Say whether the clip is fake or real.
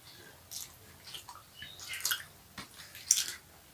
real